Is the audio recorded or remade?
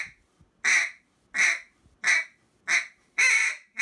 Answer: recorded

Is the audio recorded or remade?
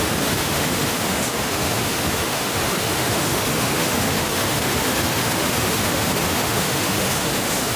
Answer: remade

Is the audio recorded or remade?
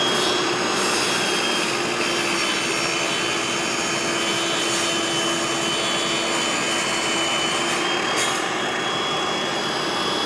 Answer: recorded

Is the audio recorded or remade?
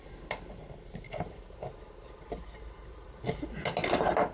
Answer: recorded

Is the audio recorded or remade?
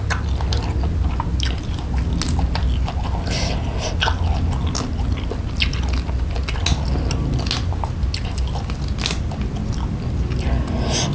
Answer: recorded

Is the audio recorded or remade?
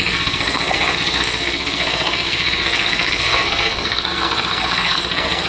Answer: remade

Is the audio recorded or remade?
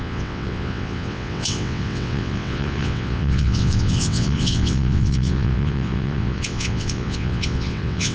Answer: remade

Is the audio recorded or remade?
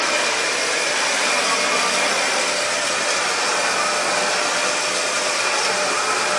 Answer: recorded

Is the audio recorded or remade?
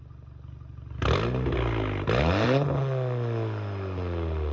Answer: recorded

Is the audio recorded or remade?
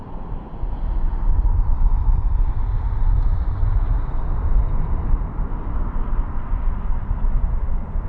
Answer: recorded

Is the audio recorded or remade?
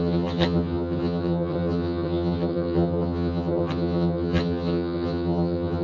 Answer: remade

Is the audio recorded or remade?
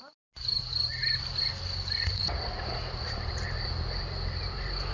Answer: recorded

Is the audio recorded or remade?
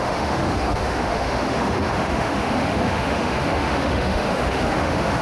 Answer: remade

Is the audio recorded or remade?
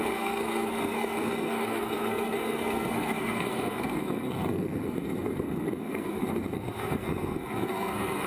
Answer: remade